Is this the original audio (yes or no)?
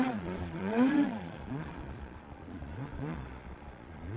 no